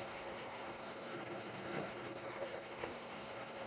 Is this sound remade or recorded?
remade